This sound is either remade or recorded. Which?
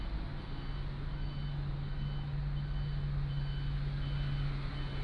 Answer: recorded